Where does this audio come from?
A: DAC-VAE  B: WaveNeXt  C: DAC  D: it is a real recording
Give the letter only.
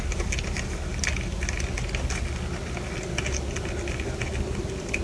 D